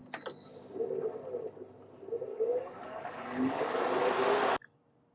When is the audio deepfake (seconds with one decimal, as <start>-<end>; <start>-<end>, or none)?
2.3-3.8